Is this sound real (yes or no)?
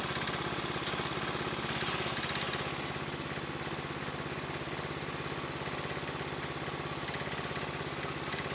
yes